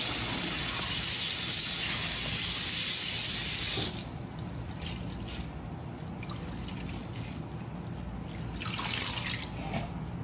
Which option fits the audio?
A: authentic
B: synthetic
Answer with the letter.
A